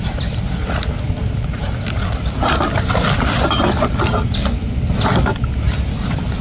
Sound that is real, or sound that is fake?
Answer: real